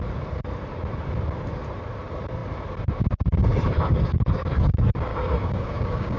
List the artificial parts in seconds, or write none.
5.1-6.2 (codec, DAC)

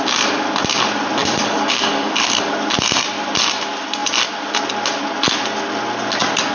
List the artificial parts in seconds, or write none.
1.2-2.4 (codec, DAC)

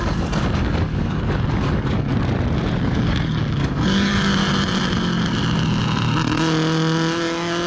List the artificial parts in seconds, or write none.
0.0-2.1 (codec, DAC); 2.8-4.4

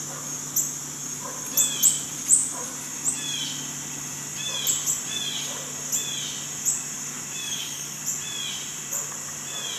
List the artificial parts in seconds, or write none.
7.4-8.0 (codec, DAC)

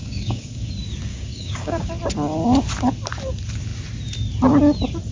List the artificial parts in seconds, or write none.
0.0-0.7 (codec, DAC); 1.1-1.9